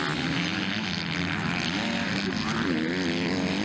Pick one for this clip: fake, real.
real